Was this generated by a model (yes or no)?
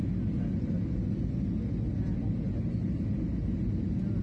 no